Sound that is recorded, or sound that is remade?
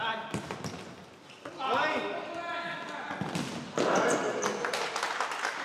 recorded